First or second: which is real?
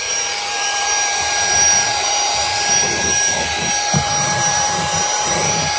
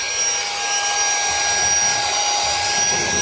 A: second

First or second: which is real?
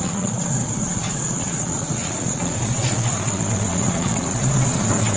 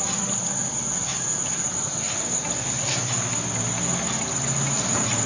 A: second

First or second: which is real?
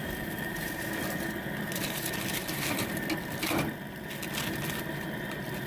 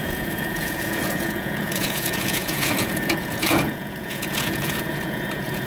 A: first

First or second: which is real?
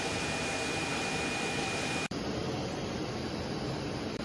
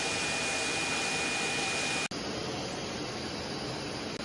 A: second